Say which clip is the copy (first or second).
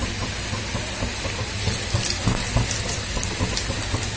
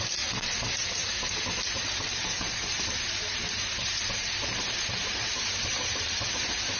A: second